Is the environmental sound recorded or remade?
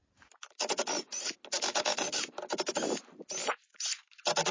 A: recorded